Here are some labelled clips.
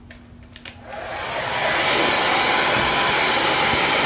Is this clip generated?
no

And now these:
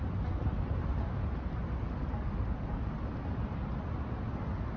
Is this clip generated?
no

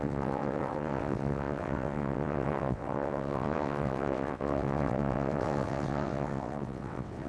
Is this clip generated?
yes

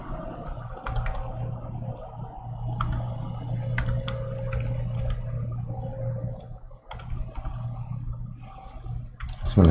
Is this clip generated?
no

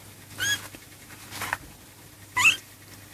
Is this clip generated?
no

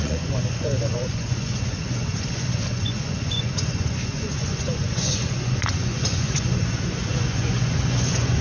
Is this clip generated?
yes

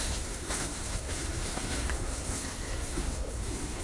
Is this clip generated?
yes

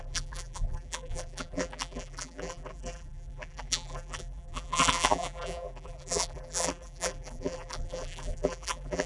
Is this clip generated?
yes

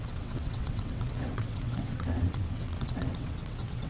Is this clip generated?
yes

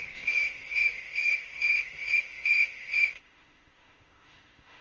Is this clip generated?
yes